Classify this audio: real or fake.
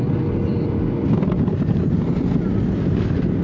real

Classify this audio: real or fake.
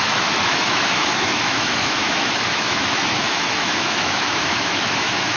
fake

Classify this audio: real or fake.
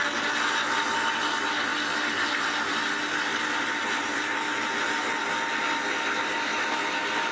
real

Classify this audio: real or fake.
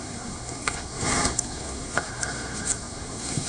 fake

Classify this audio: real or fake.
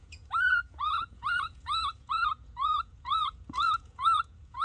fake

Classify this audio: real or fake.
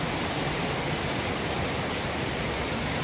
fake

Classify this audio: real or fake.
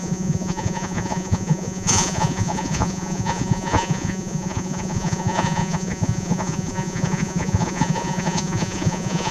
fake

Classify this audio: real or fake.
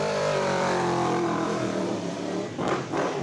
fake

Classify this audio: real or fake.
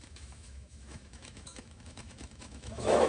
fake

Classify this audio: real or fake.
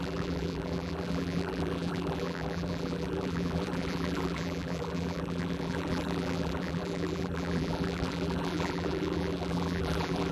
fake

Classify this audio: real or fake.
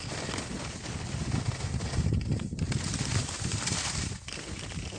real